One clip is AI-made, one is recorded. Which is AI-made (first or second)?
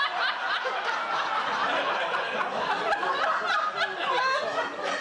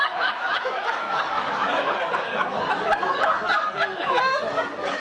second